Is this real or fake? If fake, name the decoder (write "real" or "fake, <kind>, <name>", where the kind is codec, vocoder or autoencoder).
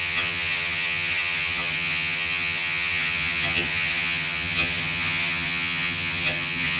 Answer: fake, vocoder, HiFi-GAN